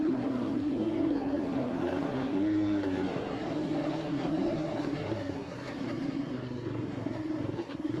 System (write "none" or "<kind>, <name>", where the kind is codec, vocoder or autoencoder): codec, SNAC